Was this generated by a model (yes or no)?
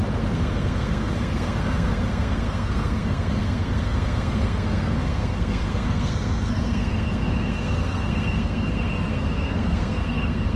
yes